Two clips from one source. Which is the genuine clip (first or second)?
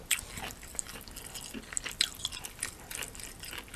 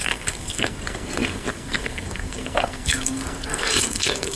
first